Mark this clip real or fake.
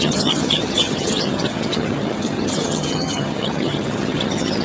fake